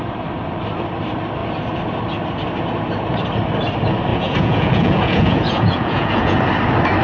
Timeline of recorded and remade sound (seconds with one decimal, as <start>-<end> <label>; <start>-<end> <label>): 0.0-4.1 recorded; 4.1-6.4 remade; 6.4-7.0 recorded